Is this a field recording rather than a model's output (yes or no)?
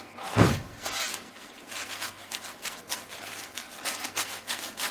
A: no